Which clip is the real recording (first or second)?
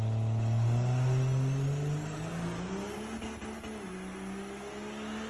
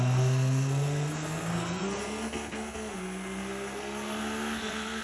first